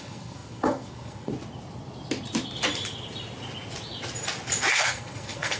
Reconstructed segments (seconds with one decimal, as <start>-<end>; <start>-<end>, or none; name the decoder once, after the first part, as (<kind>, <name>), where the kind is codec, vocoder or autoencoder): 0.0-1.3 (codec, SNAC); 4.7-5.6